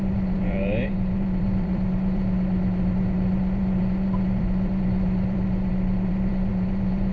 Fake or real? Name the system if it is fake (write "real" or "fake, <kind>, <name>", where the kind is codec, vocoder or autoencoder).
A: fake, vocoder, BigVGAN v2